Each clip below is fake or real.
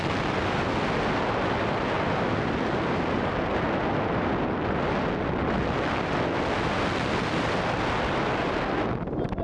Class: real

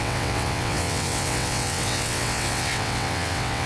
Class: fake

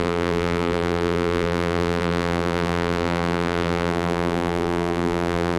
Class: fake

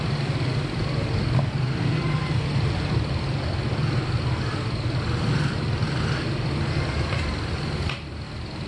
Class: fake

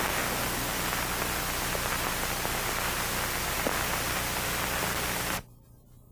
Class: real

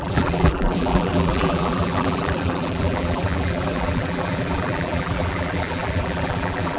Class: fake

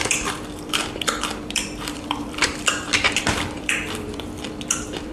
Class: fake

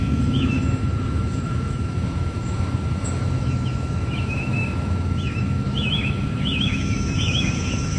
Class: fake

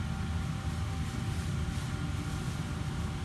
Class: real